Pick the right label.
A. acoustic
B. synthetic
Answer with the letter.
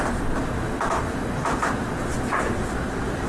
A